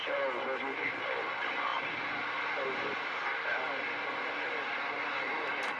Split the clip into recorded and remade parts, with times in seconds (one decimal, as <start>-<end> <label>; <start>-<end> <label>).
0.0-5.8 recorded